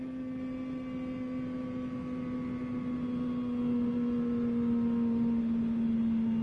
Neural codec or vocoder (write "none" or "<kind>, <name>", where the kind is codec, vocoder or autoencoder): none